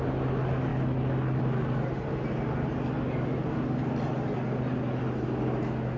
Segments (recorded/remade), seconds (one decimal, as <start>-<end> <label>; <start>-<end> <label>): 0.0-6.0 recorded